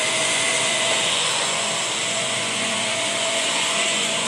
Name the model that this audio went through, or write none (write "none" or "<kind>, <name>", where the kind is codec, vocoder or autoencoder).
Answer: vocoder, Vocos